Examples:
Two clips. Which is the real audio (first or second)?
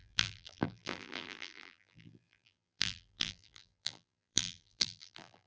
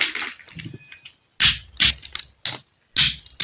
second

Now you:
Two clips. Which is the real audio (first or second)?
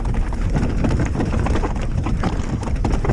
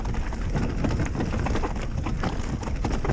second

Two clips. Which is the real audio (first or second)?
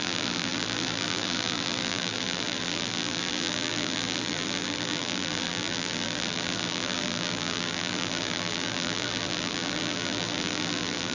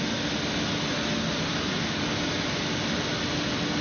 second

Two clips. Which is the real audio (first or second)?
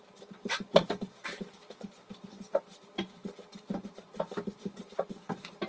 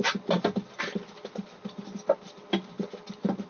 second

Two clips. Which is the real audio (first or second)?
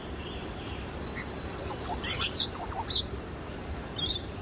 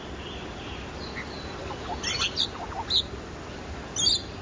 second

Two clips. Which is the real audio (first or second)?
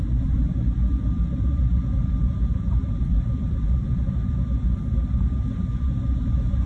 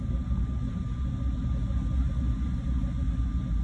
second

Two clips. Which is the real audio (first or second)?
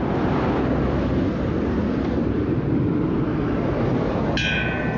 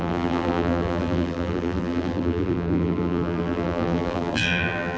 first